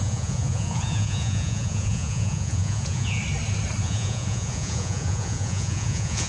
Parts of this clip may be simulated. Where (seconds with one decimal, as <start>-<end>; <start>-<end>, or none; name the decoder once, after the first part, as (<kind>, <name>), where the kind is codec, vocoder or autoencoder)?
0.0-3.2 (vocoder, Vocos); 3.8-6.3